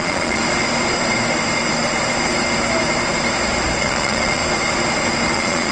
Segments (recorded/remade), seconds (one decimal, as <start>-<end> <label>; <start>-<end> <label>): 0.0-0.4 remade; 0.4-3.8 recorded; 3.8-4.4 remade; 4.4-5.3 recorded; 5.3-5.7 remade